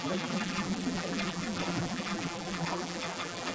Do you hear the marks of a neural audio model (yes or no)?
yes